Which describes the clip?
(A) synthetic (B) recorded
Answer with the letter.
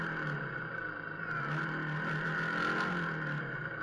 B